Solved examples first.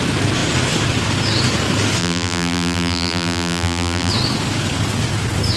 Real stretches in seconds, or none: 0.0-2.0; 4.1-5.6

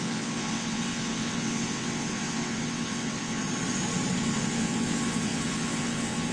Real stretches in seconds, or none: 3.4-4.2

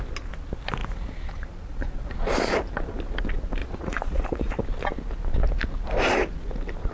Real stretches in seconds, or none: 0.0-3.6; 4.5-6.9

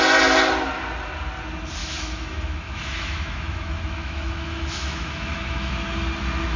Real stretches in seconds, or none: 0.0-1.8; 5.7-6.6

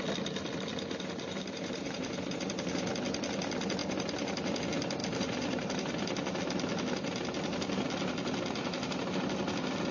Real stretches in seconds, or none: 0.0-0.7; 2.9-3.8; 4.6-5.0; 6.4-9.9

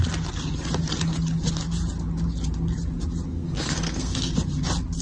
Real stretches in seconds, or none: 0.0-3.3; 4.3-5.0

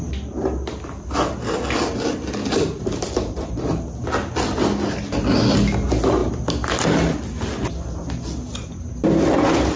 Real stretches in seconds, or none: 0.0-9.8

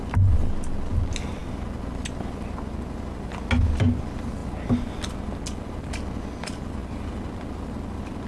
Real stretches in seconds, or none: 0.0-8.3